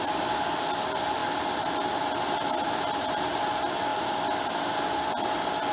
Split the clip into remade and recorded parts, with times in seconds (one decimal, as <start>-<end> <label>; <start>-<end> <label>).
0.0-5.7 recorded